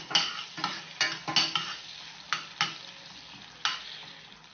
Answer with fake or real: real